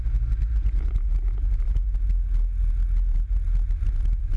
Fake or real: real